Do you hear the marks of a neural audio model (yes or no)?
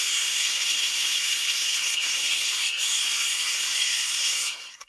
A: yes